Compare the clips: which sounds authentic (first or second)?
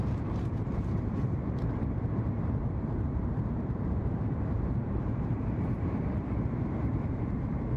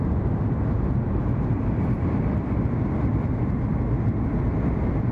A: second